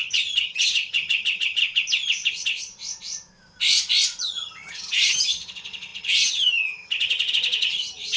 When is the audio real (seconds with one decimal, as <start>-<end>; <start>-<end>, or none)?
1.6-2.3; 2.7-4.2